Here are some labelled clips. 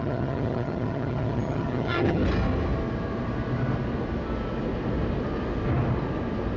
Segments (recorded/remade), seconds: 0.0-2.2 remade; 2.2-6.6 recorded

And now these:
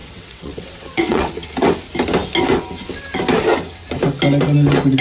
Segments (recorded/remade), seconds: 0.0-1.3 remade; 1.3-5.0 recorded